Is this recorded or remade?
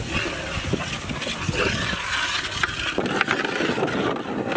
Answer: recorded